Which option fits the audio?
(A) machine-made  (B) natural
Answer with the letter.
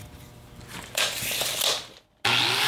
B